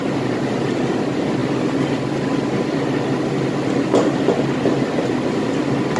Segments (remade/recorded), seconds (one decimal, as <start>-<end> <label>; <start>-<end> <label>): 0.0-6.0 recorded